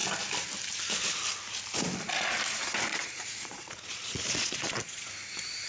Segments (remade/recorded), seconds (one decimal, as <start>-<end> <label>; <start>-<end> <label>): 0.0-2.9 recorded; 2.9-5.1 remade; 5.1-5.7 recorded